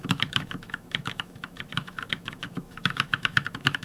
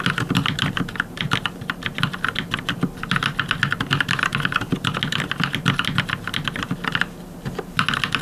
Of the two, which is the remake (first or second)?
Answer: first